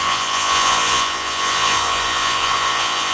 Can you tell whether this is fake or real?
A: fake